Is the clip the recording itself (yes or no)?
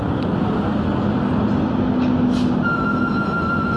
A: yes